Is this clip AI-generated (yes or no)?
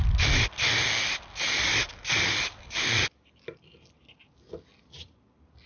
no